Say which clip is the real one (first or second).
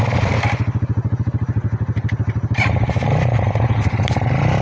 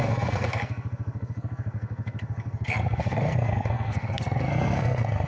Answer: first